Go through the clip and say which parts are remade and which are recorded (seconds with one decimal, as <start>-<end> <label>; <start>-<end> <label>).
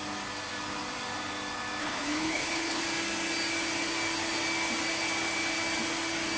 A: 0.0-1.8 recorded; 1.8-2.8 remade; 2.8-6.4 recorded